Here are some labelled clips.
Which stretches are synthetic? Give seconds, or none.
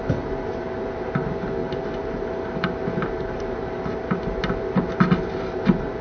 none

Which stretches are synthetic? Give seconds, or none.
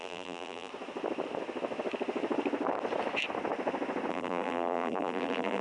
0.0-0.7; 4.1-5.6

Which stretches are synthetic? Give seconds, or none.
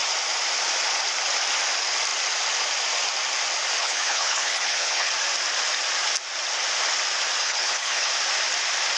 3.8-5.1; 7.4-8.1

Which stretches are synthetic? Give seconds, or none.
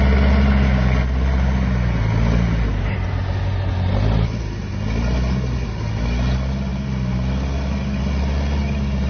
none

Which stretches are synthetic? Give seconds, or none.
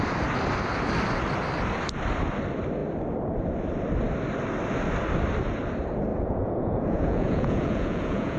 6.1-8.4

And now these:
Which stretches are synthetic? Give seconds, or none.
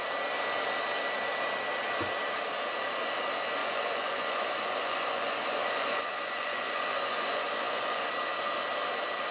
3.6-8.1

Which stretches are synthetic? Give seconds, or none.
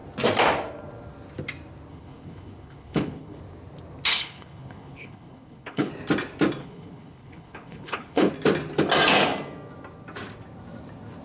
1.9-3.4; 4.1-5.9; 6.6-8.3